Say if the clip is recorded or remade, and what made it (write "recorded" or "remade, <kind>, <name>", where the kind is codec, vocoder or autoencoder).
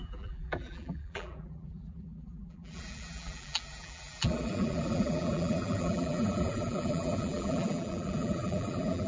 remade, vocoder, BigVGAN v2